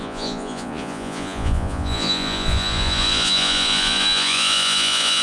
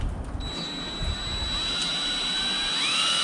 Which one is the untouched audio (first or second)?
second